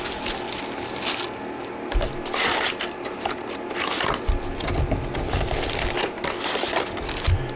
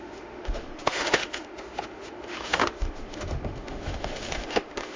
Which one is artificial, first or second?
second